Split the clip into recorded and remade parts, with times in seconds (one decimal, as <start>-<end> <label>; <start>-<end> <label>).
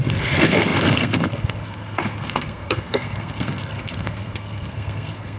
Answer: 0.0-5.4 remade